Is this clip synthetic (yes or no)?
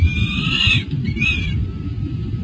no